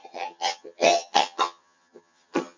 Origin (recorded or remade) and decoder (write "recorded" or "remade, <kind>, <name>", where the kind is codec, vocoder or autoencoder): remade, vocoder, HiFi-GAN